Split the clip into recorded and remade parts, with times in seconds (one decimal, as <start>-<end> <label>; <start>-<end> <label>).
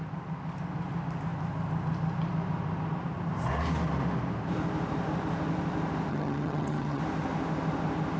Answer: 0.0-6.1 recorded; 6.1-7.0 remade; 7.0-8.2 recorded